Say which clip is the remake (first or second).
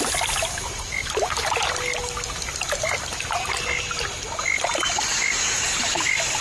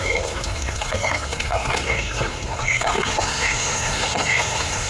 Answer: second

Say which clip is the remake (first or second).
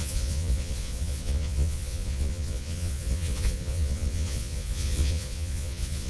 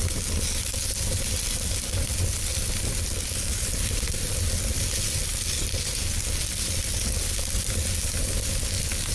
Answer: first